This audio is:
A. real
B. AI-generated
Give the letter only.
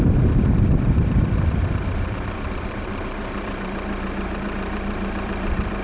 B